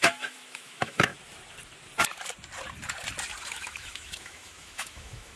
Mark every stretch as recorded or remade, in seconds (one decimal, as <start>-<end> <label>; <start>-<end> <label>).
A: 0.0-1.1 remade; 1.1-3.5 recorded; 3.5-5.4 remade